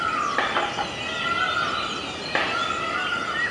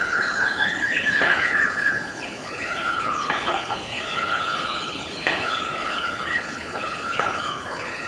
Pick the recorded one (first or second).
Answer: first